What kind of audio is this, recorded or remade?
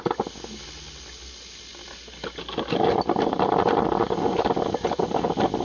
recorded